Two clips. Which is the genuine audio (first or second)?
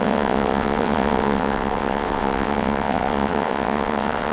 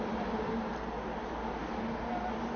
second